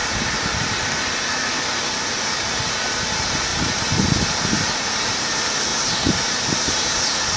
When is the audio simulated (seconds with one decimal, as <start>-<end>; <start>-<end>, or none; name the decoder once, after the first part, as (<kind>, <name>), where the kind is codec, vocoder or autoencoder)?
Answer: 2.1-7.4 (vocoder, BigVGAN v2)